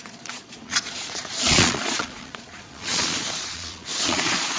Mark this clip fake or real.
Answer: fake